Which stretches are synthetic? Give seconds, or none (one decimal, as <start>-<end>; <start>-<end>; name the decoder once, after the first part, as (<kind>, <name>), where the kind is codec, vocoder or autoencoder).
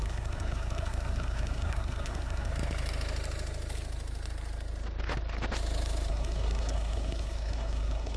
0.0-2.5 (codec, SNAC); 6.1-8.2